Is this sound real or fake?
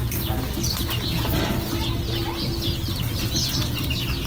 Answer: real